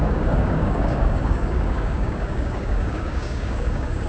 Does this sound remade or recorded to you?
remade